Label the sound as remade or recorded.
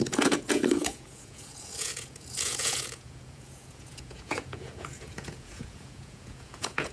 remade